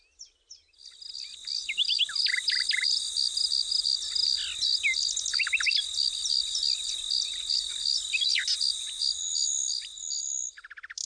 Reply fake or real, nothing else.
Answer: real